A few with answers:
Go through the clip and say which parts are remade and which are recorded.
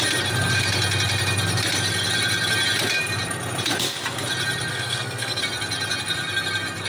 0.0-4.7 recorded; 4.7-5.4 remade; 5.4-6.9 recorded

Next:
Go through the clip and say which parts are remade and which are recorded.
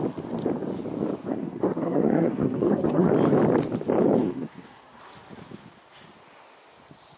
0.0-1.3 recorded; 1.3-3.1 remade; 3.1-4.2 recorded; 4.2-5.0 remade; 5.0-7.2 recorded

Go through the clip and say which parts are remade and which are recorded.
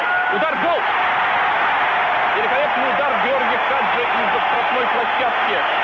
0.0-5.8 recorded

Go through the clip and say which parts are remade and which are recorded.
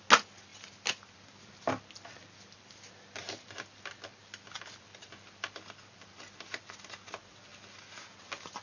0.0-8.6 recorded